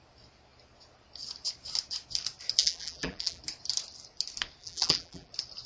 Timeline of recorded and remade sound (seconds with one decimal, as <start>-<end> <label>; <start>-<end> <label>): 0.0-2.6 recorded; 2.6-3.4 remade; 3.4-4.6 recorded; 4.6-5.3 remade; 5.3-5.7 recorded